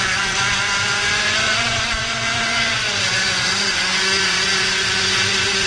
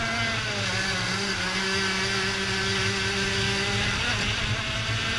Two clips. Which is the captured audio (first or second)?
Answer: second